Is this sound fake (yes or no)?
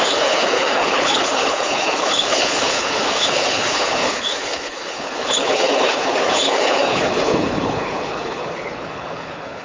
yes